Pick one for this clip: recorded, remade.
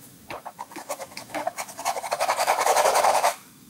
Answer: remade